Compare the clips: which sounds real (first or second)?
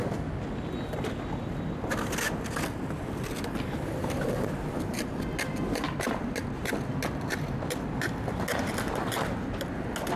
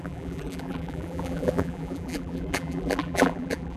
first